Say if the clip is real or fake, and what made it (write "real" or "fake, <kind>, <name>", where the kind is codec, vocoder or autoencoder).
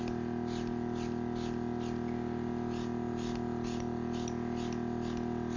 real